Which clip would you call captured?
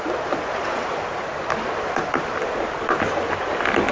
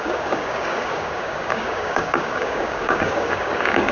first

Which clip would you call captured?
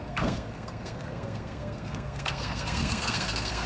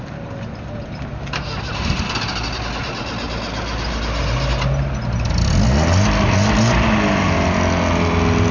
second